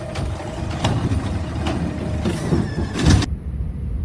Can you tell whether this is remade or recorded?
remade